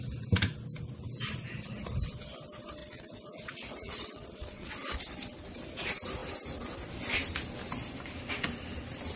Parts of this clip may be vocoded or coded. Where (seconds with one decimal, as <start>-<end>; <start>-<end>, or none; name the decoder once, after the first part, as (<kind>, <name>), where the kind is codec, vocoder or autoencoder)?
2.8-4.7 (vocoder, Vocos)